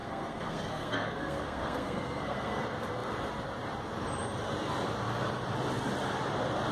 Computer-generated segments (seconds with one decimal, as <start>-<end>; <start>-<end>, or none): 0.0-2.6